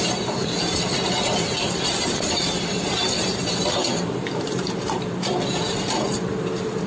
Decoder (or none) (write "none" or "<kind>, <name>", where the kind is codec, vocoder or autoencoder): vocoder, BigVGAN v2